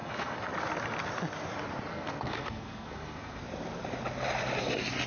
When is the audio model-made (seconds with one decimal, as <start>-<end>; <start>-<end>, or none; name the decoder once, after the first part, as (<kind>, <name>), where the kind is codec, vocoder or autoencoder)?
0.0-0.5 (codec, SNAC); 1.9-3.4